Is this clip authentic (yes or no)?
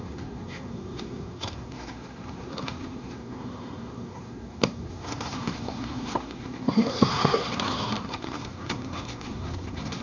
no